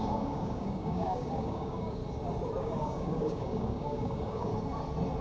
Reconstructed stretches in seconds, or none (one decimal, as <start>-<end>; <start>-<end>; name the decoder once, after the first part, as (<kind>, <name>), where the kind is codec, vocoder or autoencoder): 0.0-2.0 (codec, DAC); 2.6-4.5